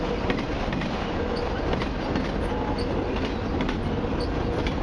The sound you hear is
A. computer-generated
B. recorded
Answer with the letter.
B